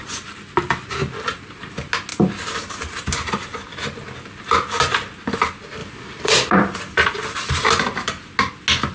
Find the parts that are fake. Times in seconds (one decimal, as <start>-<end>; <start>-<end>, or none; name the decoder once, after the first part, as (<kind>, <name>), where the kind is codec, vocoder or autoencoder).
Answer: 2.1-2.8 (vocoder, BigVGAN v2); 5.8-6.5